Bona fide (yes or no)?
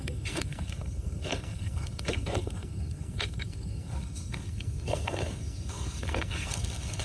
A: no